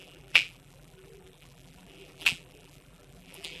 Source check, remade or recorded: remade